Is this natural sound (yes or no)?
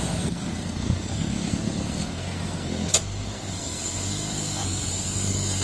no